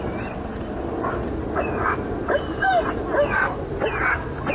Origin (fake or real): real